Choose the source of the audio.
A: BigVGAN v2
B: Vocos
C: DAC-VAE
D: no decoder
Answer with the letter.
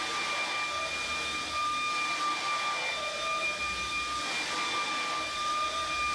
D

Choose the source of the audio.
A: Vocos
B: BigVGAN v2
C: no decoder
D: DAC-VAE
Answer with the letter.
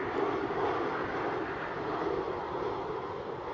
C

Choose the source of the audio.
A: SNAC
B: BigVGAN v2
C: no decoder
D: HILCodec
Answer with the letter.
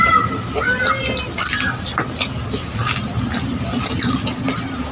C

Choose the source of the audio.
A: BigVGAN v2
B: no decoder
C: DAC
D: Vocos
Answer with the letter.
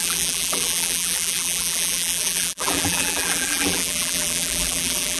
A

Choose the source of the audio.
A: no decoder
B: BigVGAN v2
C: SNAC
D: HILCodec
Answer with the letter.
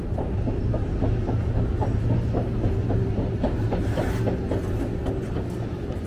A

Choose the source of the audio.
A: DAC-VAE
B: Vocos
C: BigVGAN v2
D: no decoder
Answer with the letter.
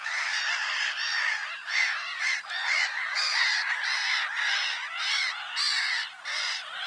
C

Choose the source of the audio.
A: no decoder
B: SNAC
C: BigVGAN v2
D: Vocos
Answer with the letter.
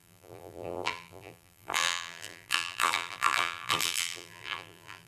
C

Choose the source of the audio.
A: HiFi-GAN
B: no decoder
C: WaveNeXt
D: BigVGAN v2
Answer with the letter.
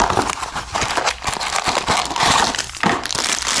D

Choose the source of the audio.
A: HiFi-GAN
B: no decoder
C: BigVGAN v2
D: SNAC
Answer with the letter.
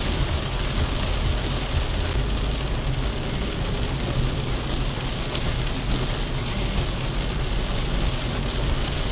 B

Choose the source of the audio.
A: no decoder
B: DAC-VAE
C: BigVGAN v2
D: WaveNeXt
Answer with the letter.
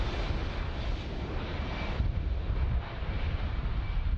A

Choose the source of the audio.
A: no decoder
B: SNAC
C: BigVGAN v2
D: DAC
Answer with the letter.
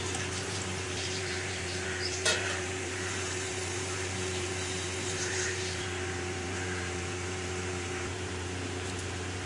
C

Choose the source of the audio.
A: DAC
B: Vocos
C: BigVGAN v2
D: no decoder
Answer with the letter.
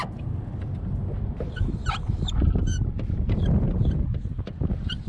D